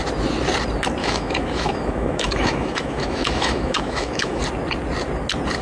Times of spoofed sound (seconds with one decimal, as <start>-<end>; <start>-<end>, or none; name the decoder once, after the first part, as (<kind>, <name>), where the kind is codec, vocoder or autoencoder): 1.0-4.4 (autoencoder, DAC-VAE)